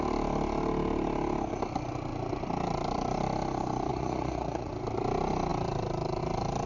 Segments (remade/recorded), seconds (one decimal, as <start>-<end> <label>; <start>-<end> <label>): 0.0-3.9 recorded; 3.9-4.7 remade; 4.7-6.7 recorded